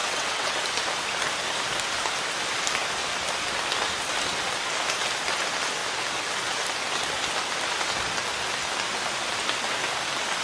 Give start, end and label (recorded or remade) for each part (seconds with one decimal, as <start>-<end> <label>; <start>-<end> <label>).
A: 0.0-0.6 remade; 0.6-10.4 recorded